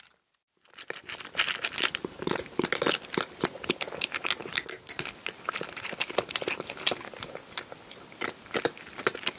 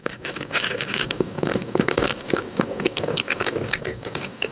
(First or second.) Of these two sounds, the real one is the first